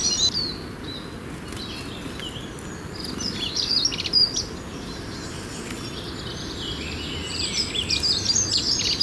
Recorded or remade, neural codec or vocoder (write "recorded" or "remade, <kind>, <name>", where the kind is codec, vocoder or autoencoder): recorded